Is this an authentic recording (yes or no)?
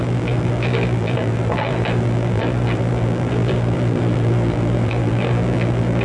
no